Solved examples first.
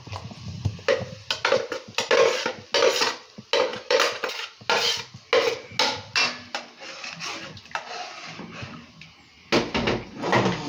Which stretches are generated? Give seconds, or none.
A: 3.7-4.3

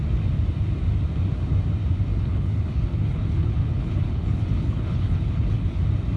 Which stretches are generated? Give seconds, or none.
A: 2.1-5.8

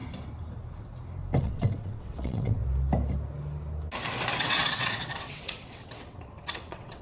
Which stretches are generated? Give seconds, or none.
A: 1.4-2.6; 4.3-7.0

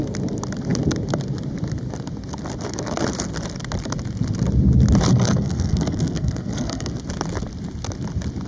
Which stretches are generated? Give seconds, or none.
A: 5.1-6.9